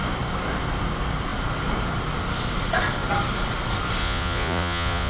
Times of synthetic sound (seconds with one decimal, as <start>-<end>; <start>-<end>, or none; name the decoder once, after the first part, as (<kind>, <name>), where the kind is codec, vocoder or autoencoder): 4.0-5.1 (vocoder, Vocos)